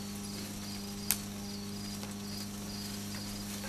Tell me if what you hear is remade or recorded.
recorded